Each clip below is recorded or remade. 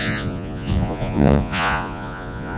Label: remade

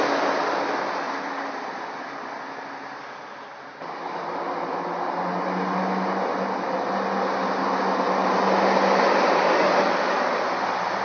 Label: recorded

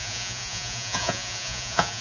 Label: remade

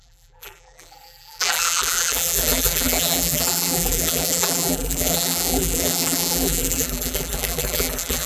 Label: remade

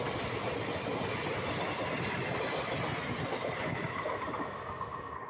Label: recorded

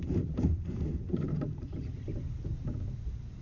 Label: remade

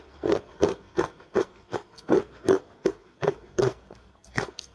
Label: remade